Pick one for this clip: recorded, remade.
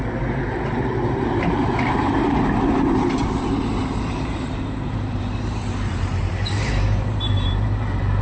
remade